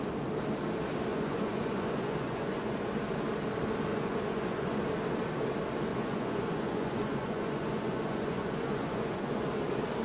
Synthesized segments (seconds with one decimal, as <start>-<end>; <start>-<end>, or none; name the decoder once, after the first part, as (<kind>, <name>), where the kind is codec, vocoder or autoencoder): 1.1-2.9 (vocoder, Vocos); 3.9-4.8; 5.9-9.4